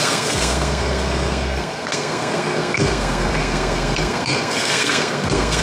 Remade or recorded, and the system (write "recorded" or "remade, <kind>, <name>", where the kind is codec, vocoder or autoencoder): remade, codec, SNAC